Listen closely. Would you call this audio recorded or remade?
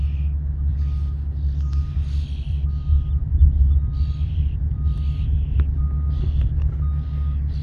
recorded